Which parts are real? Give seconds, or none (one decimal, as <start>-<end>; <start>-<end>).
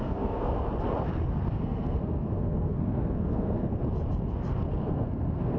0.7-1.5; 3.8-4.8